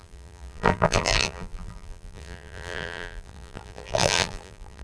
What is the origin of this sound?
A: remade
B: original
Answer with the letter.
A